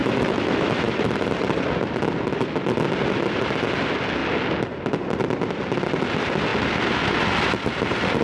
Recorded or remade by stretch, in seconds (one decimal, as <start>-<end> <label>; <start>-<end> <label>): 0.0-0.8 remade; 0.8-8.2 recorded

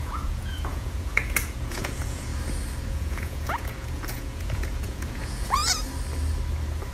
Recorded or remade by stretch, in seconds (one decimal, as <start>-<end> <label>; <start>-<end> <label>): 0.0-2.3 remade; 2.3-2.9 recorded; 2.9-5.6 remade; 5.6-6.9 recorded

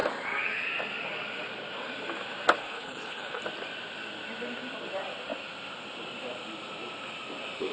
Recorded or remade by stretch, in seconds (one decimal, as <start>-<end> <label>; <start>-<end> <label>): 0.0-2.6 recorded; 2.6-3.4 remade; 3.4-7.7 recorded